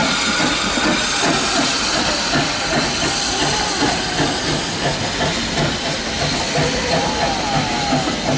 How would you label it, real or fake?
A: real